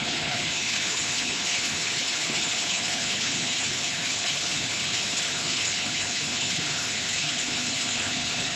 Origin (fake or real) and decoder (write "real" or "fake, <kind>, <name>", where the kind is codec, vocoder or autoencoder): fake, codec, HILCodec